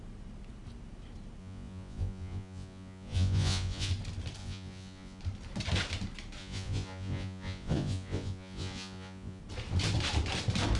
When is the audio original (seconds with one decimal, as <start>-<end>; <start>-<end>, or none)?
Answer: 0.0-1.4; 3.9-4.4; 5.2-6.4; 9.4-10.8